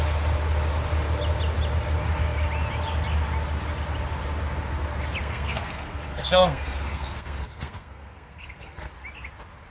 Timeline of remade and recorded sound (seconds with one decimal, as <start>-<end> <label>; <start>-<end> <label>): 0.0-5.2 recorded; 5.2-8.9 remade; 8.9-9.7 recorded